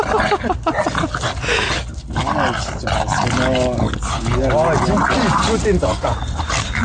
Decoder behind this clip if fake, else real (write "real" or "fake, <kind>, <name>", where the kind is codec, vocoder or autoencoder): real